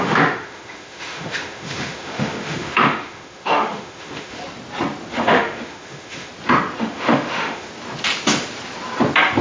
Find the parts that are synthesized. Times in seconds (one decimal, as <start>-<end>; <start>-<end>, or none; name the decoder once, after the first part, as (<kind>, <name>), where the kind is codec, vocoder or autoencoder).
0.0-4.4 (autoencoder, DAC-VAE); 5.1-6.3; 6.8-7.7